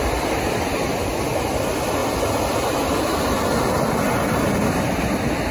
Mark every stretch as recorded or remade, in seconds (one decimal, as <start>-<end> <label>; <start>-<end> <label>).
0.0-5.5 recorded

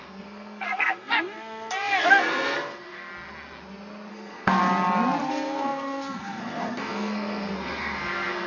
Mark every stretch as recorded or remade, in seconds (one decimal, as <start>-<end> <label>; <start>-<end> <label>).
0.0-3.1 remade; 3.1-4.1 recorded; 4.1-4.6 remade; 4.6-5.3 recorded; 5.3-8.5 remade

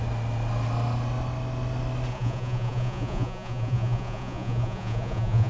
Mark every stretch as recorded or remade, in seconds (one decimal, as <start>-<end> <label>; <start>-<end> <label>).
0.0-2.1 recorded; 2.1-5.5 remade

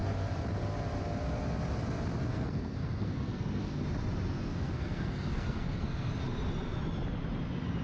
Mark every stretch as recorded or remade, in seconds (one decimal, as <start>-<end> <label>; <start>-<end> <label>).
0.0-2.3 recorded; 2.3-3.8 remade; 3.8-4.5 recorded; 4.5-6.1 remade; 6.1-7.8 recorded

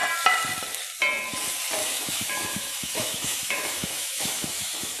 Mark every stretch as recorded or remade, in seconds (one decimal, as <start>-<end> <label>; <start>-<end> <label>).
0.0-1.8 recorded; 1.8-5.0 remade

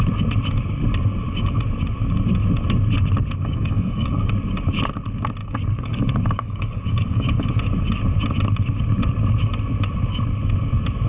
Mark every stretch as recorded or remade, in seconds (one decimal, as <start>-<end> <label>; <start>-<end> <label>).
0.0-3.4 recorded; 3.4-4.3 remade; 4.3-5.4 recorded; 5.4-7.5 remade; 7.5-11.1 recorded